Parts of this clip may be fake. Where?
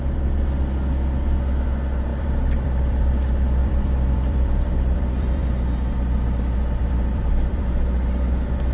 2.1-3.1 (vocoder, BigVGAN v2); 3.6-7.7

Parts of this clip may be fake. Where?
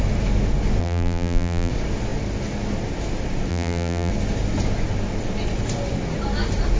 0.8-1.7 (vocoder, BigVGAN v2); 3.5-4.1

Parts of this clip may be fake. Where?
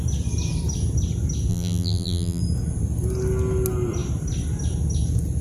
1.5-2.4 (vocoder, BigVGAN v2)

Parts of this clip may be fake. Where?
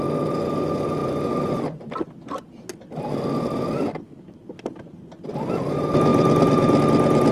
1.0-2.0 (vocoder, BigVGAN v2); 6.1-6.8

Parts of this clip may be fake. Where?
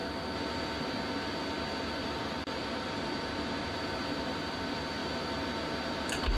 1.5-5.0 (vocoder, BigVGAN v2)